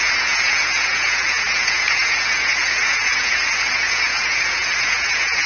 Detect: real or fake fake